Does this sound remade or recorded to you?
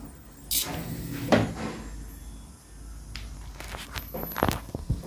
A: recorded